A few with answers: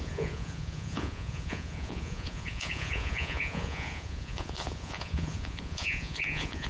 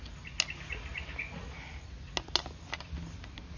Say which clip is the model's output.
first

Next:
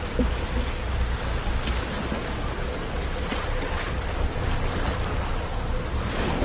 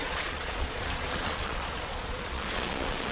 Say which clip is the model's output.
second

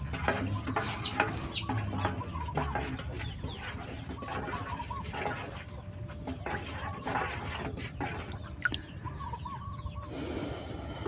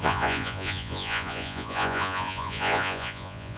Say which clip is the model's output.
second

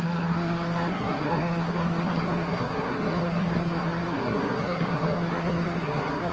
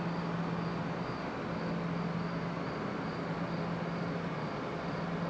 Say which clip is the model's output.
first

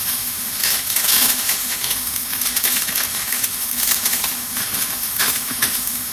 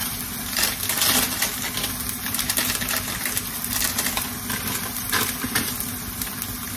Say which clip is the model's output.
first